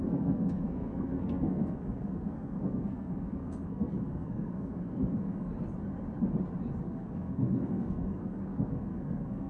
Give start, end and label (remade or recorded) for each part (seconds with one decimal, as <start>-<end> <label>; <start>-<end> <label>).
0.0-5.5 remade; 5.5-6.8 recorded; 6.8-9.5 remade

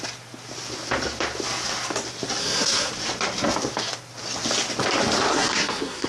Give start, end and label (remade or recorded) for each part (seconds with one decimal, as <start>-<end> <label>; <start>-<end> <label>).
0.0-2.4 recorded; 2.4-2.9 remade; 2.9-5.3 recorded; 5.3-6.1 remade

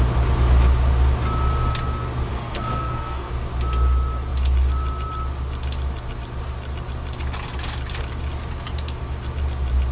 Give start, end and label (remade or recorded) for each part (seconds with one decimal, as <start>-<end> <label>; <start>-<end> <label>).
0.0-2.3 recorded; 2.3-3.3 remade; 3.3-9.9 recorded